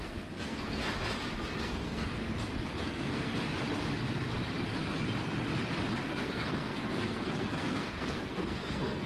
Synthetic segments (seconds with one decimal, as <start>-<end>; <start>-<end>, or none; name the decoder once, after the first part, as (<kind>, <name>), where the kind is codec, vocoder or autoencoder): 0.0-0.8 (codec, SNAC); 1.6-2.1; 2.8-3.3; 6.0-9.1